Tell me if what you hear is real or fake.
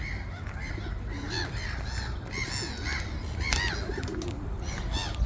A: real